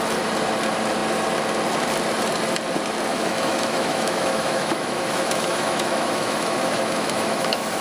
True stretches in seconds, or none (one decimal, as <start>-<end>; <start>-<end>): 0.0-3.1